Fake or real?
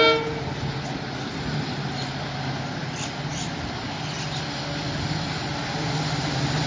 real